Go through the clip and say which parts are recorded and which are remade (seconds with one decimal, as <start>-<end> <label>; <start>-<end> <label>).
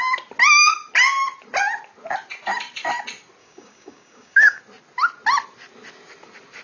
0.0-3.4 recorded; 3.4-4.6 remade; 4.6-6.6 recorded